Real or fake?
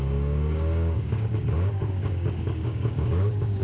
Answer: fake